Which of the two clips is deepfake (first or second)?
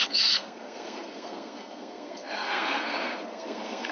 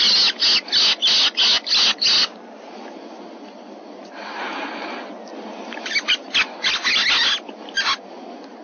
first